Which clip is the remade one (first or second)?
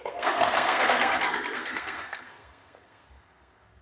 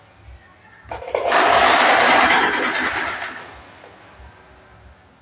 first